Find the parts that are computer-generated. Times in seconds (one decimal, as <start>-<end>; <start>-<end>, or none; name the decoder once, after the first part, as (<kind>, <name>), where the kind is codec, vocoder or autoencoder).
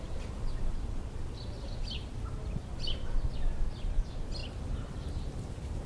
none